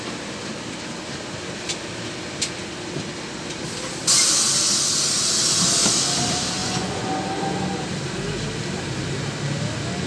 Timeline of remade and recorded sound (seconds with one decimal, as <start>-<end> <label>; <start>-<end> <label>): 0.0-6.6 recorded; 6.6-7.1 remade; 7.1-10.1 recorded